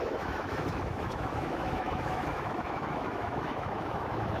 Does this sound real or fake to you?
fake